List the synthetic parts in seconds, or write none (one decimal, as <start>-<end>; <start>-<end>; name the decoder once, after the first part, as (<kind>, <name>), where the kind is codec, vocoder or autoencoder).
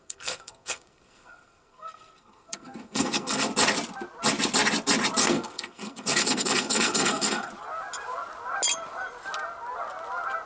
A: 0.0-3.5 (codec, SNAC); 5.2-7.5